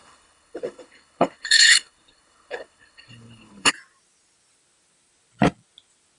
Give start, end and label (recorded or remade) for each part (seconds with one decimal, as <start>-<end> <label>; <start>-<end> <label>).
0.0-3.7 remade; 3.7-6.2 recorded